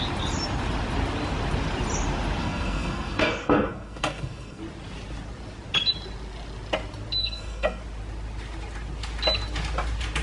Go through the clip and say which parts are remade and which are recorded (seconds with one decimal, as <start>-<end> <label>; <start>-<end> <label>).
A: 0.0-2.4 recorded; 2.4-4.6 remade; 4.6-7.2 recorded; 7.2-7.8 remade; 7.8-10.2 recorded